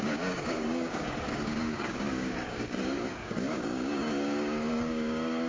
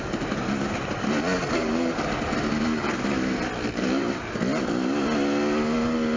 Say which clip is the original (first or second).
second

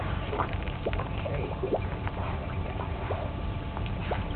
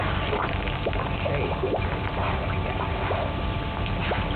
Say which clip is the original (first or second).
second